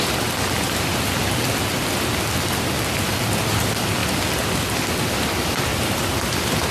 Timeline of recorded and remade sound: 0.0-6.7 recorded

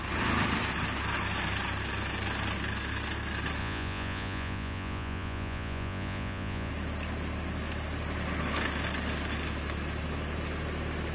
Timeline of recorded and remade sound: 0.0-3.6 recorded; 3.6-6.7 remade; 6.7-11.1 recorded

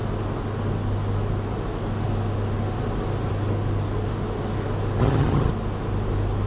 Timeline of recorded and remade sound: 0.0-5.0 recorded; 5.0-5.5 remade; 5.5-6.5 recorded